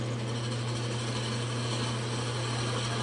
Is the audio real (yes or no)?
yes